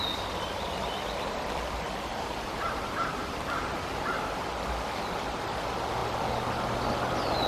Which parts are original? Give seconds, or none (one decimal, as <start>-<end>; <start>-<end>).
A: 0.0-2.1; 4.4-7.5